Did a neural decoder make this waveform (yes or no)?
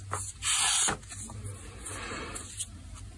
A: no